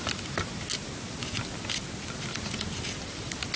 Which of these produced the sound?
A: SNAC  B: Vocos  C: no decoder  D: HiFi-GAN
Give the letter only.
C